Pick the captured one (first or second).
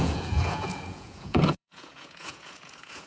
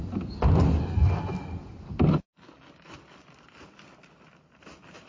second